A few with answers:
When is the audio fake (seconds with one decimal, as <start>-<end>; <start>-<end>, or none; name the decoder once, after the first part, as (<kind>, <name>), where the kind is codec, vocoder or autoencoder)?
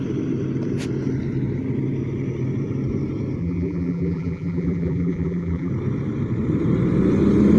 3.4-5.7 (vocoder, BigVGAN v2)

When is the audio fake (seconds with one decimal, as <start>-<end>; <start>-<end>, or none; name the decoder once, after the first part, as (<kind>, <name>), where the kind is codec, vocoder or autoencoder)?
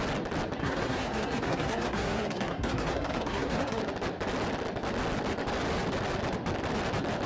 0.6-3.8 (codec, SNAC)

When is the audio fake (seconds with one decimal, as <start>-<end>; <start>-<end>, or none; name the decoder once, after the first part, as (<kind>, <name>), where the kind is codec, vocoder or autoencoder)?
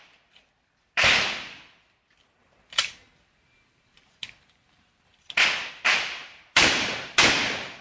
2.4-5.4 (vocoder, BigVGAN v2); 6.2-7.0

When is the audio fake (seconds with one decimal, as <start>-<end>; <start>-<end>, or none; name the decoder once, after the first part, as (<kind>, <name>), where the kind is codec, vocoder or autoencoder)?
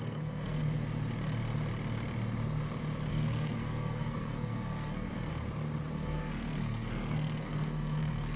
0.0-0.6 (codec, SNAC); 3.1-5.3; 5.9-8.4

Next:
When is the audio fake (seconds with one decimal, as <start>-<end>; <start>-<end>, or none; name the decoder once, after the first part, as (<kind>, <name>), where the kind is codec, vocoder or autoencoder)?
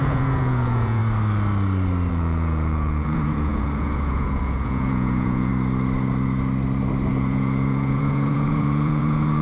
0.0-1.0 (vocoder, Vocos); 2.1-5.5; 7.1-9.4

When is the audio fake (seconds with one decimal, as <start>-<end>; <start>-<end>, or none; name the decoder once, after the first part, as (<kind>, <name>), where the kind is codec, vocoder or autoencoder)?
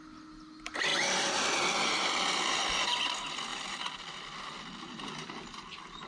none